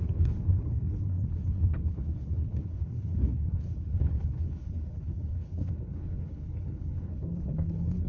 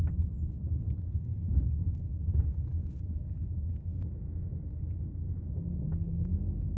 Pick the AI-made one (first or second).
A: first